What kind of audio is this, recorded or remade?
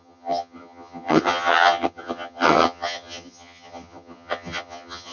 remade